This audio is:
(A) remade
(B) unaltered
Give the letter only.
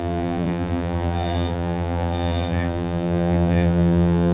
A